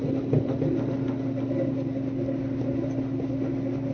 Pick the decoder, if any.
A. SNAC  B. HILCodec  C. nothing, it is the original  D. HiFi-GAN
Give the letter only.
C